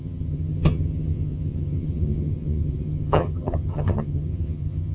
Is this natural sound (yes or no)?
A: no